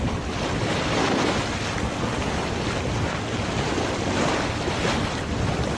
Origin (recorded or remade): recorded